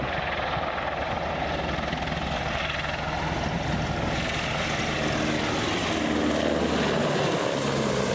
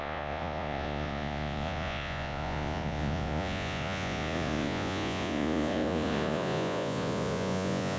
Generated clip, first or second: second